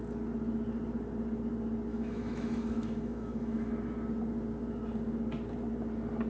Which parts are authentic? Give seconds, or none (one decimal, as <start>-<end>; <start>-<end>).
0.0-1.9; 3.7-6.3